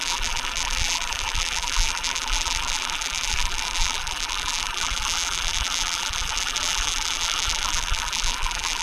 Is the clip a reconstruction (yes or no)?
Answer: yes